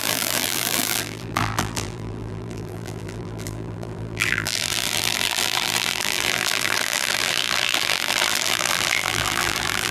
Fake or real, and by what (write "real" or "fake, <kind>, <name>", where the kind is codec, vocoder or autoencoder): fake, vocoder, BigVGAN v2